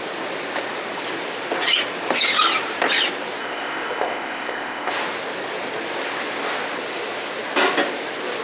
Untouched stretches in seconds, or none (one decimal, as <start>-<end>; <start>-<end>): 0.0-3.4; 4.9-8.4